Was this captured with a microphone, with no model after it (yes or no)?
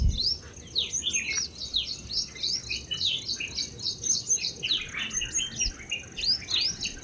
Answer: yes